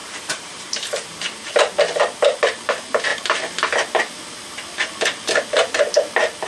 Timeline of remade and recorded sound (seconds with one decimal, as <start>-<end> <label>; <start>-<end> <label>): 0.0-1.5 remade; 1.5-6.5 recorded